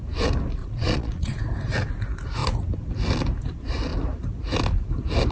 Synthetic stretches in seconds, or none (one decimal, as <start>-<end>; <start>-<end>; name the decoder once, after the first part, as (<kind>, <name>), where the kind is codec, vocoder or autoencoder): 0.6-1.4 (vocoder, Vocos)